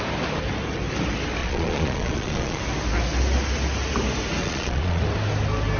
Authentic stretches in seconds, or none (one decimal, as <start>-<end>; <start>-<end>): 0.0-1.4; 2.6-4.4; 5.0-5.8